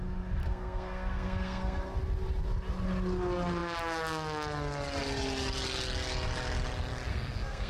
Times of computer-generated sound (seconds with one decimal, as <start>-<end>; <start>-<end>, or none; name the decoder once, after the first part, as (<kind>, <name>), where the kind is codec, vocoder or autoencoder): 0.4-1.8 (codec, SNAC); 7.1-7.7